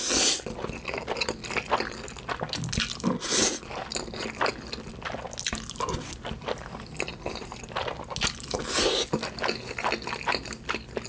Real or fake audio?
real